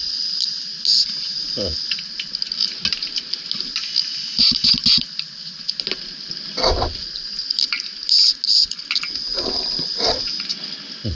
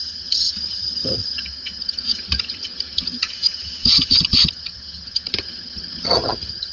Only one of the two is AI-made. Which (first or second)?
second